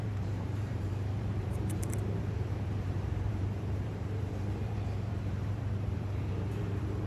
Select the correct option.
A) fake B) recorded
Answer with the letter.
A